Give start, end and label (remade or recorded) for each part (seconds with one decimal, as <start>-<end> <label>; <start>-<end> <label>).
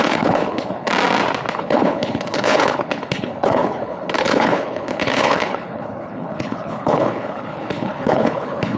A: 0.0-0.9 remade; 0.9-1.5 recorded; 1.5-8.8 remade